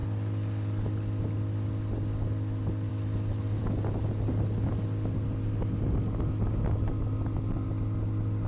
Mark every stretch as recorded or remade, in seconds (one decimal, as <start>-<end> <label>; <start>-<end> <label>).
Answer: 0.0-8.5 recorded